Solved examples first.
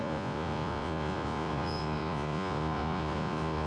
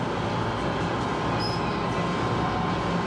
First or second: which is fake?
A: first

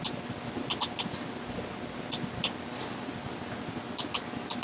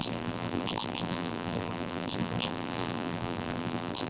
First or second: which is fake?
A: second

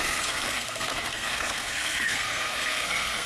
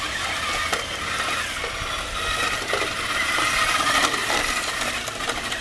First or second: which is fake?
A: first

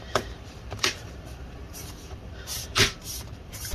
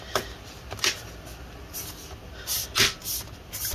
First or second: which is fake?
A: first